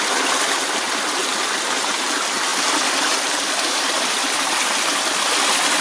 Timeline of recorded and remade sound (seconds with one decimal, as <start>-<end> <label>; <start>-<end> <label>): 0.0-1.2 recorded; 1.2-1.9 remade; 1.9-2.5 recorded; 2.5-4.5 remade; 4.5-5.8 recorded